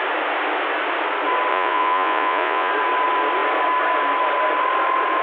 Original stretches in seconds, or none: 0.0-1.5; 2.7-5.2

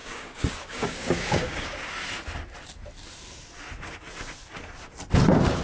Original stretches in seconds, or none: 1.9-5.6

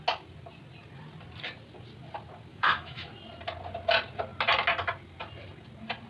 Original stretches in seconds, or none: 0.0-2.5; 3.1-6.1

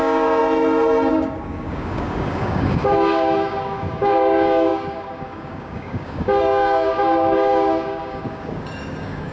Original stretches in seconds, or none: 0.4-1.1

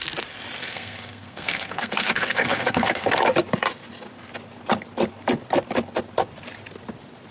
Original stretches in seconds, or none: 0.0-0.6; 3.2-7.3

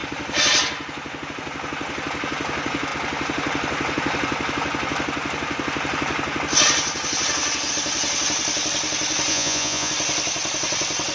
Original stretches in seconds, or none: 0.0-9.3; 9.9-11.1